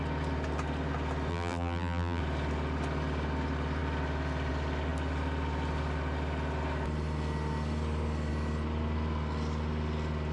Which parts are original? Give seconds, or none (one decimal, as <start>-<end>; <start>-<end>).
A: 0.0-1.3; 2.2-10.3

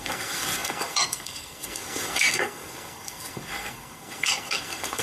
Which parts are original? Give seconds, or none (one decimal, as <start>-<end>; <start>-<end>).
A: none

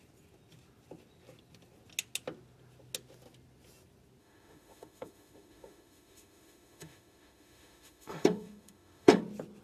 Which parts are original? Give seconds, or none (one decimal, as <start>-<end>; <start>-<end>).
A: 0.0-4.2; 9.2-9.6

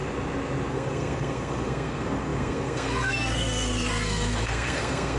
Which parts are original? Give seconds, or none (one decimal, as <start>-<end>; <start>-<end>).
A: 0.0-0.7